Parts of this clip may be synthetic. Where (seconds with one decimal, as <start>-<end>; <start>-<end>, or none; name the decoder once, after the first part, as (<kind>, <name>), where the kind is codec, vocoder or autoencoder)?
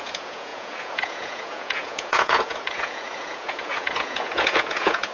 0.0-5.1 (vocoder, Vocos)